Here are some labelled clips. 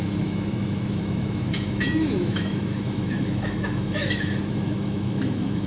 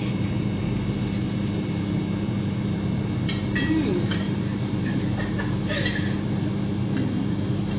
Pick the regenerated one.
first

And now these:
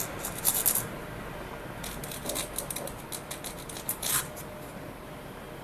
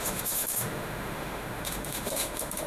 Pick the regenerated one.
second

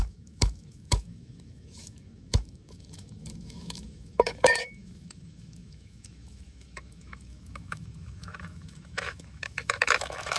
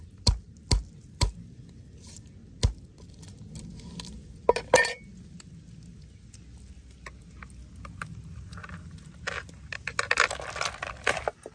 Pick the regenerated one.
first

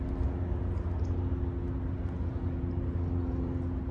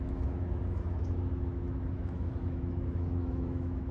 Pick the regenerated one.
second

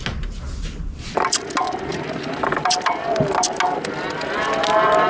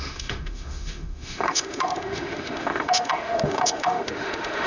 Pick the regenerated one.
second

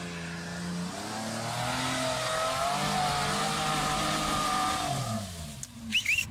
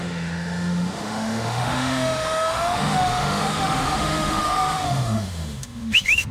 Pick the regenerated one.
second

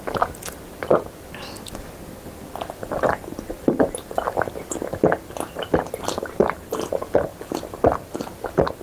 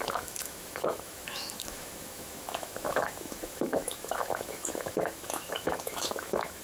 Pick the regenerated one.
second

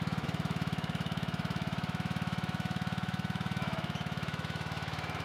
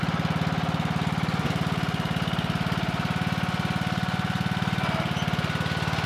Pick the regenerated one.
first